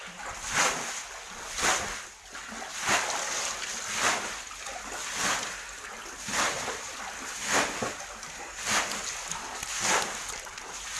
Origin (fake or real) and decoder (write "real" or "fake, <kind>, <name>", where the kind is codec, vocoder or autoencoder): real